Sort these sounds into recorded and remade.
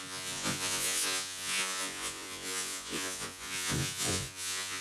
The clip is remade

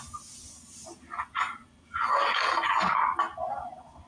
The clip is recorded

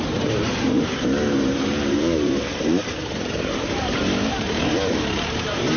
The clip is remade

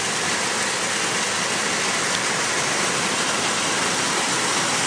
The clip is recorded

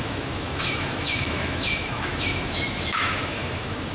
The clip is remade